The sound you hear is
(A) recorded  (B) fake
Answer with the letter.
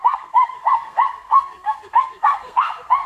B